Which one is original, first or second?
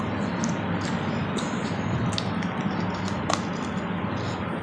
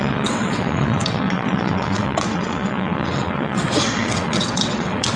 first